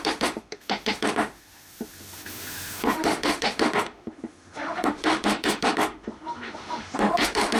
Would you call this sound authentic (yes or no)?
no